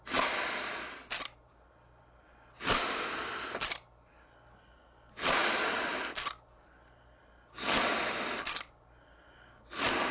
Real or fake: real